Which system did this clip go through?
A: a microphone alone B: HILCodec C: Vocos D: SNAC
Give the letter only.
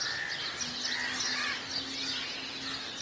A